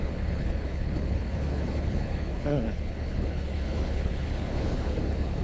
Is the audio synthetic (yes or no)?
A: yes